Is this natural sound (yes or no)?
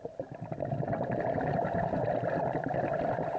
yes